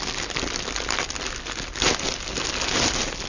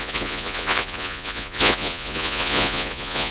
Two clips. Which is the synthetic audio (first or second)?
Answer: second